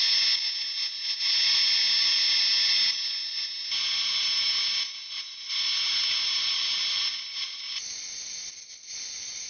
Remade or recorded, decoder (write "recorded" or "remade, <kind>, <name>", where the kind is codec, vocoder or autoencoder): recorded